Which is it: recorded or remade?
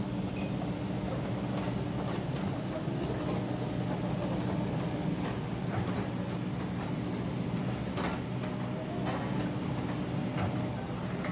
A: recorded